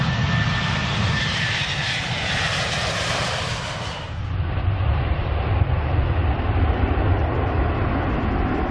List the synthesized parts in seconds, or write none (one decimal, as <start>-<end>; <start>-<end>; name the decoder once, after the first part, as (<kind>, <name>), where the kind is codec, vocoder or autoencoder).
0.8-5.5 (vocoder, BigVGAN v2)